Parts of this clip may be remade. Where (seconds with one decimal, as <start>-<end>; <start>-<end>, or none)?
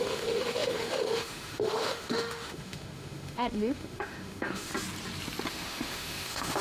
0.0-4.7; 5.5-6.6